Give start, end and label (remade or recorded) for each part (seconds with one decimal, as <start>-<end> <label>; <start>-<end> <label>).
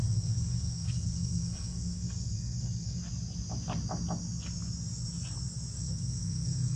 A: 0.0-3.0 remade; 3.0-5.8 recorded; 5.8-6.8 remade